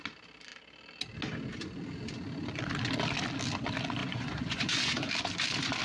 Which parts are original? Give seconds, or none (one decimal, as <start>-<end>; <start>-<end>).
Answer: 0.0-4.0; 5.1-5.8